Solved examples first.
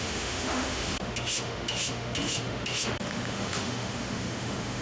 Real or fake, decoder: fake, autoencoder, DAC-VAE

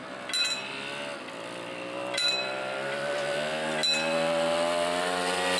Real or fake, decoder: real